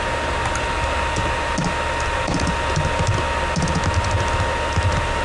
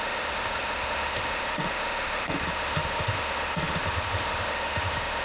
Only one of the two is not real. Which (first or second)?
second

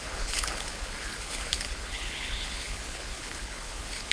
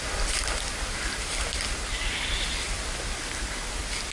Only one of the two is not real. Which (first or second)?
first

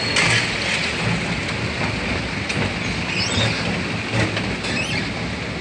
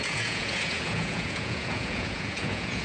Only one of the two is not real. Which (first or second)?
second